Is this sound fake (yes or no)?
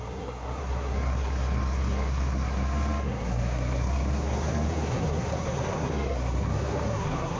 yes